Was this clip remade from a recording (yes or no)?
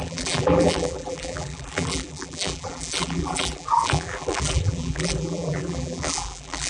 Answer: yes